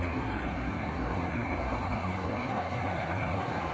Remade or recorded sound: remade